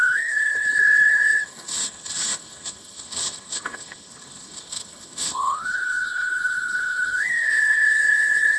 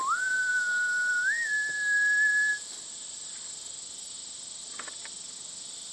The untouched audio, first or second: second